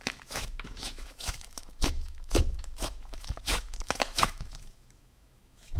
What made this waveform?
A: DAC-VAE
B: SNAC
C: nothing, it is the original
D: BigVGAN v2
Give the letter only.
A